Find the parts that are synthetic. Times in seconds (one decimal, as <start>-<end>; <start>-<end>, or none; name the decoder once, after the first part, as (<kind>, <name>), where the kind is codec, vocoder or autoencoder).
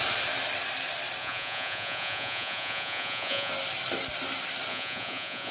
1.2-3.5 (vocoder, Vocos); 4.7-5.5